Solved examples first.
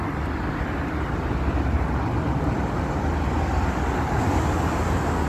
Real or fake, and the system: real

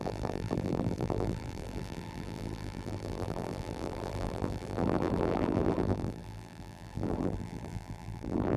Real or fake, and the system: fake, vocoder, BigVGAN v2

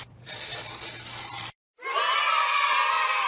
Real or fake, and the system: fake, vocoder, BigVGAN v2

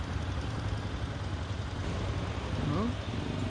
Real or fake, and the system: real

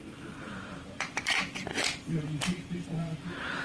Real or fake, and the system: fake, vocoder, BigVGAN v2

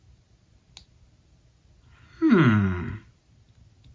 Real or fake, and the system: real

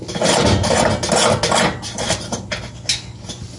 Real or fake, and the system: real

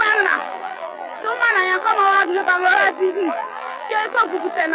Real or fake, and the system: fake, vocoder, BigVGAN v2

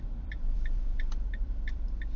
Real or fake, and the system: fake, vocoder, BigVGAN v2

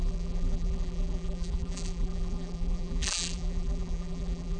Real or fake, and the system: fake, vocoder, BigVGAN v2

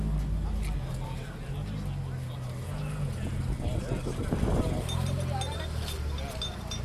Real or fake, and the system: real